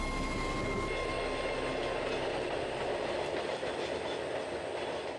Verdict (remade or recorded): recorded